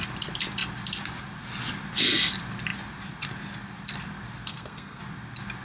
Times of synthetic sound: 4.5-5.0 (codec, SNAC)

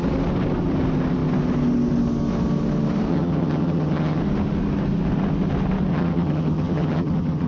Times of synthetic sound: 3.1-4.2 (vocoder, HiFi-GAN); 5.9-7.5

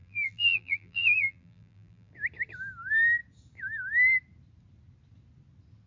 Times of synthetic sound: 0.0-2.1 (vocoder, BigVGAN v2)